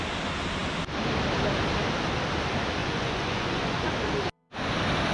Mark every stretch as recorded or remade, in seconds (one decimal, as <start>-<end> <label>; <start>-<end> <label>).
0.0-2.8 recorded; 2.8-3.9 remade; 3.9-5.1 recorded